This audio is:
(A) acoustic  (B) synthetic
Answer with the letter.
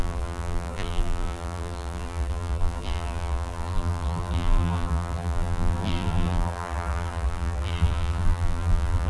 B